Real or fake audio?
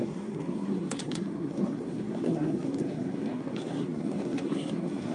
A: fake